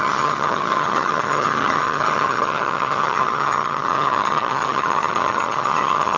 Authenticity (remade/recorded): remade